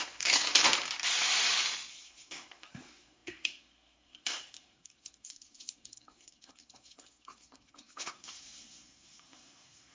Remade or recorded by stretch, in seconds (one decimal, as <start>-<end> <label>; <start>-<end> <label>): 0.0-0.6 remade; 0.6-1.9 recorded; 1.9-9.9 remade